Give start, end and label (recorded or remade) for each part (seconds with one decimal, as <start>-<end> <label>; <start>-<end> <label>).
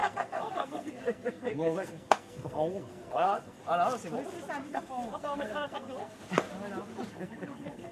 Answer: 0.0-3.6 remade; 3.6-4.7 recorded; 4.7-6.2 remade; 6.2-7.1 recorded; 7.1-7.9 remade